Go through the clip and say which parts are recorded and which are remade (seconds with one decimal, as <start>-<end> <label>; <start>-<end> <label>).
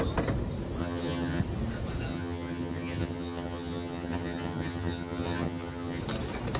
0.0-0.8 recorded; 0.8-1.4 remade; 1.4-2.1 recorded; 2.1-6.0 remade; 6.0-6.6 recorded